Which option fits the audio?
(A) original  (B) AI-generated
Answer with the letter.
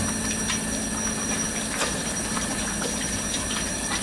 A